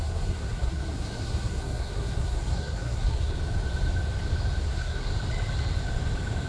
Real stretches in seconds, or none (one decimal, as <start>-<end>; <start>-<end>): 3.3-4.6; 5.1-6.5